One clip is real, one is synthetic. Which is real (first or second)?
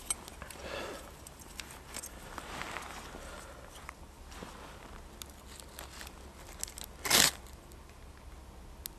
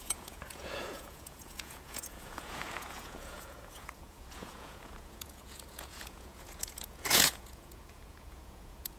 first